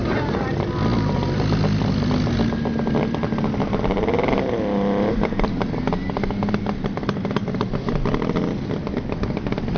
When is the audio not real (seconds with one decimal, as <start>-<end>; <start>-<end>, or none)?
none